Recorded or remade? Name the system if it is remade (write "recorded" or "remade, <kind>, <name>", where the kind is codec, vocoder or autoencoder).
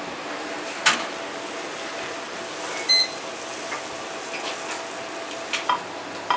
recorded